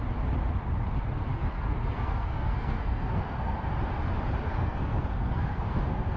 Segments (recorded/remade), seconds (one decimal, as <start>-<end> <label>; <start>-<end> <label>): 0.0-1.3 recorded; 1.3-3.7 remade; 3.7-4.5 recorded; 4.5-6.2 remade